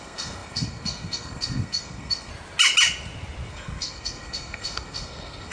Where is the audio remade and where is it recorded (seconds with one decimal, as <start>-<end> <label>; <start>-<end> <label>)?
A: 0.0-2.3 remade; 2.3-3.5 recorded; 3.5-5.5 remade

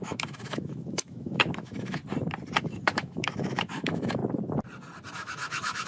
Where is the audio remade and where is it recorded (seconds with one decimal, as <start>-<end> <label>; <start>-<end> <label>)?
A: 0.0-2.0 remade; 2.0-2.6 recorded; 2.6-4.2 remade; 4.2-5.1 recorded; 5.1-5.9 remade

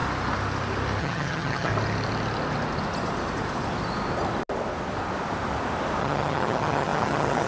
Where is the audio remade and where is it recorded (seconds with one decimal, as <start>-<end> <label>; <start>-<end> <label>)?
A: 0.0-1.0 recorded; 1.0-1.7 remade; 1.7-6.0 recorded; 6.0-7.5 remade

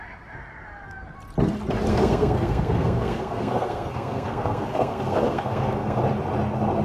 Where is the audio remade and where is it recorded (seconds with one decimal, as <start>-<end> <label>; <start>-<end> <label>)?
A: 0.0-1.9 recorded; 1.9-6.0 remade; 6.0-6.8 recorded

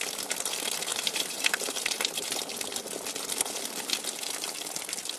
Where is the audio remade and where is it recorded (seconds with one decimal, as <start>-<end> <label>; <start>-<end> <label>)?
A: 0.0-0.9 recorded; 0.9-2.3 remade; 2.3-5.2 recorded